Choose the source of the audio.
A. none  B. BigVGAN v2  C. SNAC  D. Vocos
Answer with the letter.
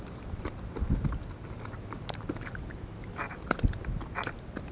A